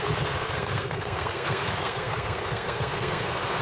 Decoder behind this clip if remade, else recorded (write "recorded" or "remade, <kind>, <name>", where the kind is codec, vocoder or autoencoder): remade, codec, SNAC